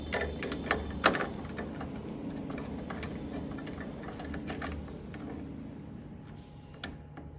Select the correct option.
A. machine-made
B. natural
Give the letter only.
B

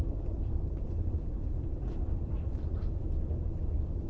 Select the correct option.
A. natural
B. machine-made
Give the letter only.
B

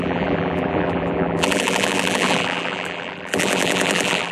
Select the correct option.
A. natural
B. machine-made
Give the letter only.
B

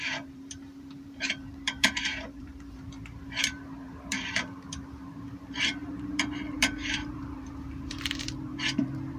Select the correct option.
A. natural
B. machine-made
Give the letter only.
B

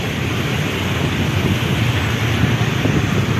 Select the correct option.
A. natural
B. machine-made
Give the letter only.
A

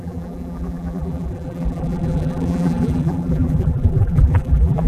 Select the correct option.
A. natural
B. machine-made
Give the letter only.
B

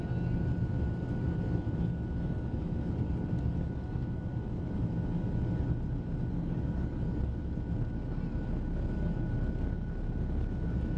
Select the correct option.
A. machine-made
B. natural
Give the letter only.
B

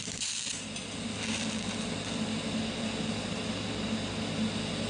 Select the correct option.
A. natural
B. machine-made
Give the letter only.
A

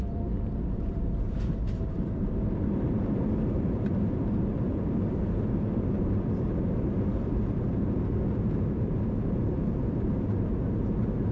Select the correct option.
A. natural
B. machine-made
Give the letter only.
B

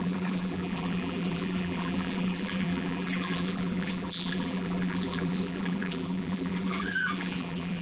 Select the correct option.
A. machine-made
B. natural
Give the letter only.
A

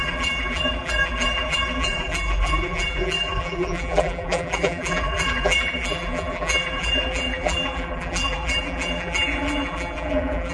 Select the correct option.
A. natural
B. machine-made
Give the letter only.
B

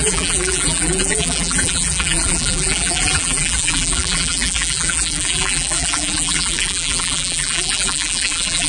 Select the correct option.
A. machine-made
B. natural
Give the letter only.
A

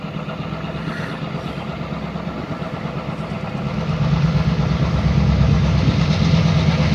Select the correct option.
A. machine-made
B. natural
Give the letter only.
B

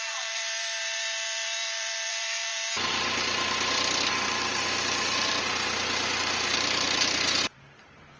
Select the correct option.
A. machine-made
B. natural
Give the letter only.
A